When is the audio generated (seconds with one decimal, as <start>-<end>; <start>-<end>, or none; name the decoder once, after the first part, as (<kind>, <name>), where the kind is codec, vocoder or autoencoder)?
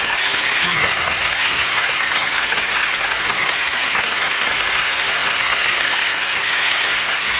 0.0-7.4 (codec, SNAC)